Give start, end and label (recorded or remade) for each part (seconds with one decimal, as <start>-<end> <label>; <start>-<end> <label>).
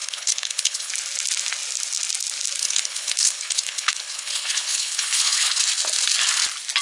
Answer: 0.0-0.9 remade; 0.9-2.6 recorded; 2.6-5.6 remade; 5.6-6.8 recorded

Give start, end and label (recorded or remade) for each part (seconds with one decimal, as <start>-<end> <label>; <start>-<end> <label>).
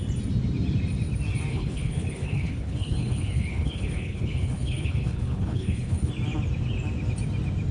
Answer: 0.0-1.5 recorded; 1.5-6.1 remade; 6.1-7.7 recorded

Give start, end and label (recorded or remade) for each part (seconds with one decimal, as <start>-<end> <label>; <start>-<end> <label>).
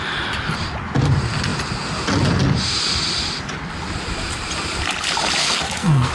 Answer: 0.0-5.4 recorded; 5.4-6.1 remade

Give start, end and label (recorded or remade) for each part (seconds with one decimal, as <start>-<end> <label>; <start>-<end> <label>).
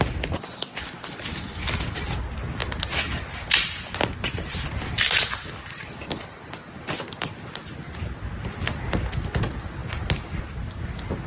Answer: 0.0-11.3 recorded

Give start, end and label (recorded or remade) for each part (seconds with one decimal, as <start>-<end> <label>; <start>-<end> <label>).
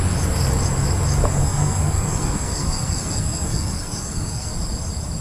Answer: 0.0-1.4 recorded; 1.4-4.5 remade; 4.5-5.2 recorded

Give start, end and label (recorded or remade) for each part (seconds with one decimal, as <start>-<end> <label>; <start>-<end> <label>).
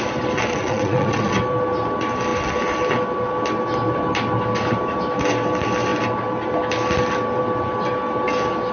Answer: 0.0-0.5 recorded; 0.5-1.3 remade; 1.3-8.7 recorded